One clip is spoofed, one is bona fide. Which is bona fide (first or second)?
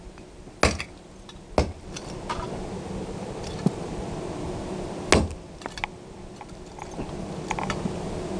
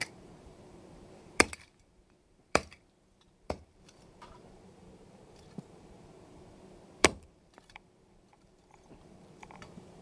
first